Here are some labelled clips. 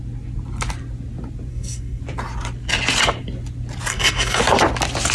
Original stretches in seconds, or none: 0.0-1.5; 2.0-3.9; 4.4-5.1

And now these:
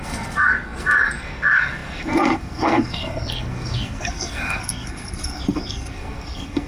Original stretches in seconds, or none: none

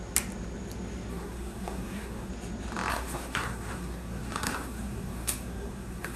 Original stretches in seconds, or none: 0.0-1.1; 2.3-2.9